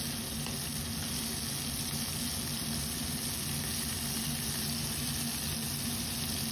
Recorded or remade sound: recorded